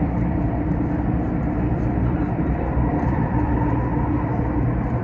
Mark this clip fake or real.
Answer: fake